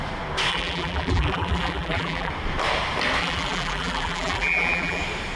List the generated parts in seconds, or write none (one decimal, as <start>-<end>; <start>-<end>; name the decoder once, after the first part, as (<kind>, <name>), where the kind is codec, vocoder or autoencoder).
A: 0.5-2.3 (vocoder, BigVGAN v2); 3.2-5.0